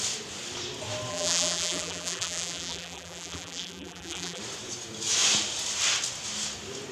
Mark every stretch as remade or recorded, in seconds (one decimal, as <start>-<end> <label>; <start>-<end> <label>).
0.0-1.1 recorded; 1.1-4.4 remade; 4.4-6.9 recorded